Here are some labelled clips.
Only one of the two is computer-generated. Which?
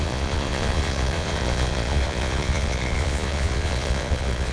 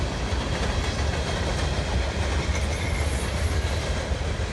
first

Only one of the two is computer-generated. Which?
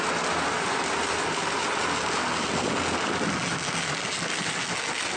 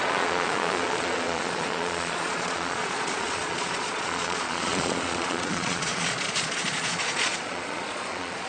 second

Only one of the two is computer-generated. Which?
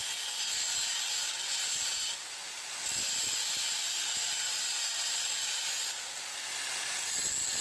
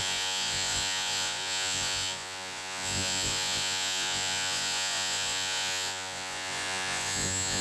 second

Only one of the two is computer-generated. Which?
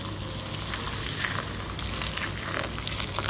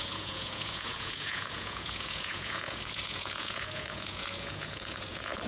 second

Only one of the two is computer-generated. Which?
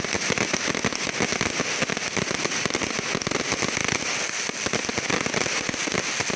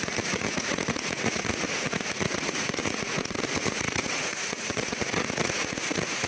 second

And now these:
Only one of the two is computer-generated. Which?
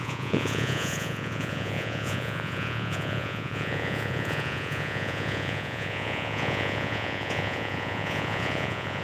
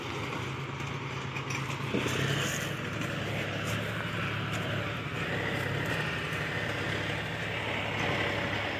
first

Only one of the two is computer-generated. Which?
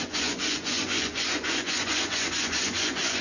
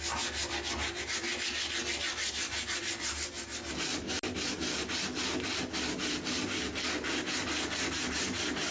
first